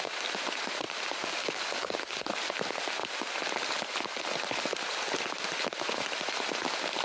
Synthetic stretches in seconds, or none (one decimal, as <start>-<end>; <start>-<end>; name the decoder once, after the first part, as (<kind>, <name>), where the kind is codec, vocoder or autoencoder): 1.2-2.3 (codec, DAC)